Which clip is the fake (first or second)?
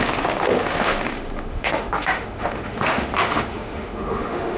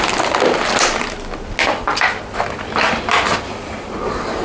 first